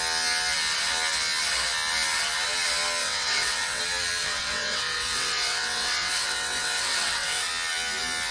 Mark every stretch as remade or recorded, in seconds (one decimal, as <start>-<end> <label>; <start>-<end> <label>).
0.0-3.0 recorded; 3.0-3.8 remade; 3.8-4.2 recorded; 4.2-7.5 remade; 7.5-8.3 recorded